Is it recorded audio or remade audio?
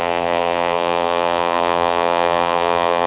remade